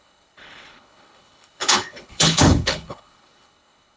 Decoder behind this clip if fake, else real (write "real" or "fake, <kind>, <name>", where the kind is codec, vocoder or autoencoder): fake, codec, HILCodec